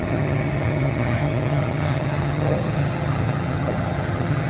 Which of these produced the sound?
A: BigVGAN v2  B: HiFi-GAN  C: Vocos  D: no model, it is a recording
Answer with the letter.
B